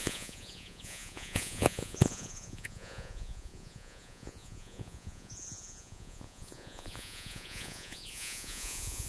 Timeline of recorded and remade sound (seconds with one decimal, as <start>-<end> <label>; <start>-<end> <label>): 0.0-9.1 remade